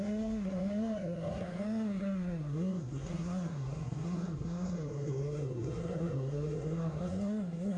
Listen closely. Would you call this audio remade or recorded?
remade